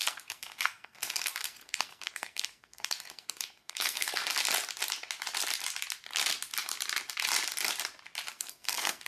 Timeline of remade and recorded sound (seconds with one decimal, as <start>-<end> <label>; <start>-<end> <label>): 0.0-4.2 remade; 4.2-8.3 recorded; 8.3-9.1 remade